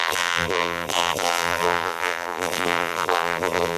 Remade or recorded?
remade